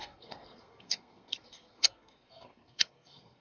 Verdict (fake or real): fake